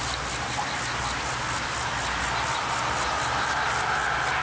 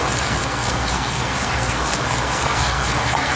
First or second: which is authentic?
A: first